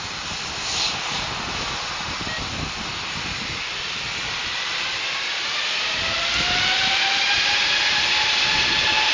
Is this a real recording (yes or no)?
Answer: yes